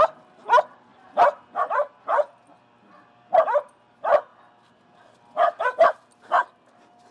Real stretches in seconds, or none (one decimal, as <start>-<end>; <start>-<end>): 0.0-7.1